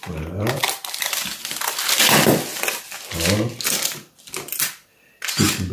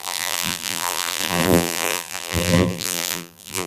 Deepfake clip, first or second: second